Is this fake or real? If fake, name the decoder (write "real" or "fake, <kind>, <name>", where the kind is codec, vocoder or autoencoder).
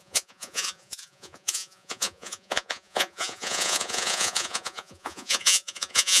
fake, vocoder, Vocos